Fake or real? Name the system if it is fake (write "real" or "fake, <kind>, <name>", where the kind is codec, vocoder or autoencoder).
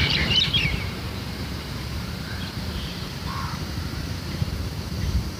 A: fake, vocoder, BigVGAN v2